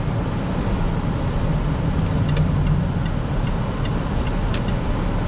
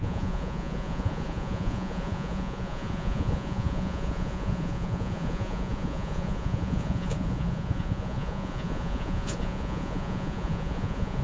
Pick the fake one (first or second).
second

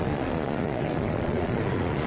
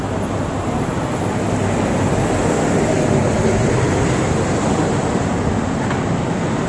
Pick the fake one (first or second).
first